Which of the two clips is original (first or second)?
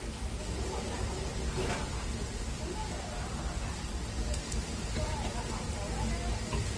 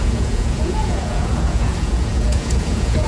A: first